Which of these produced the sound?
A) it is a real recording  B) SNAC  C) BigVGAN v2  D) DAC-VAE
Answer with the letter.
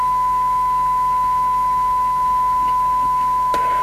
D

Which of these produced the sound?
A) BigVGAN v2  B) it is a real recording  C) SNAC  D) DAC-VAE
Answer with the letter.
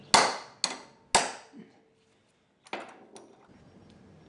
B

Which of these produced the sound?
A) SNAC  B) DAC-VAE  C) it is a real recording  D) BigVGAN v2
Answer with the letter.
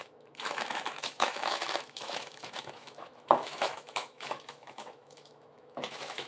B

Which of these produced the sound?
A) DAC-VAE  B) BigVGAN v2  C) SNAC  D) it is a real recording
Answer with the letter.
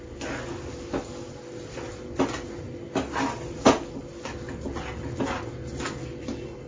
D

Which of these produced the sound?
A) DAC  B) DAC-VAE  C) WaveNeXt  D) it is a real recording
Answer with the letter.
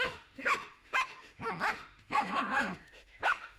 B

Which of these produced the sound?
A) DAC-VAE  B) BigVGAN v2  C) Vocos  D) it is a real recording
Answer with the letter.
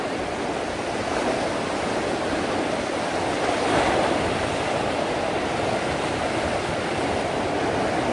D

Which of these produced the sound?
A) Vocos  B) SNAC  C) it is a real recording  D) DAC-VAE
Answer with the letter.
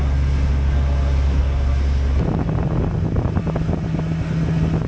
C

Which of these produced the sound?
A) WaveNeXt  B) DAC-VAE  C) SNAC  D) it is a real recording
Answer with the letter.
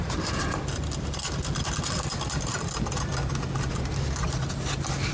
D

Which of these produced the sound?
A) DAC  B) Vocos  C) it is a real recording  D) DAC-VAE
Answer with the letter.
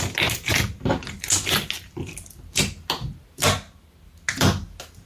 C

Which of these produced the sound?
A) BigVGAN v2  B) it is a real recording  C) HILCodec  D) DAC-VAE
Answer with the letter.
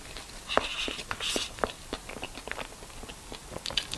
B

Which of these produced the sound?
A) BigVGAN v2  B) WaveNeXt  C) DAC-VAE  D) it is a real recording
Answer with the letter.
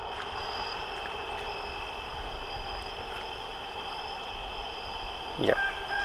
D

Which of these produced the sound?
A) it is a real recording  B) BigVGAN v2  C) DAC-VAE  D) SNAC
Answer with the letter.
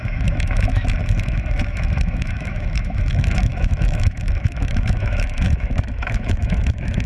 C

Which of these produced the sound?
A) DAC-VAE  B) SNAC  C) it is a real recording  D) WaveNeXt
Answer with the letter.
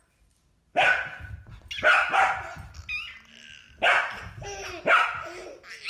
C